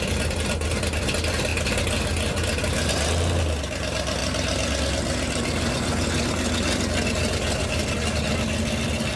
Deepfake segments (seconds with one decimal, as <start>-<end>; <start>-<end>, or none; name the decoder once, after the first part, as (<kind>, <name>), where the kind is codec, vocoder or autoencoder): none